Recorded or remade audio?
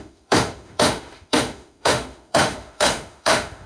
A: remade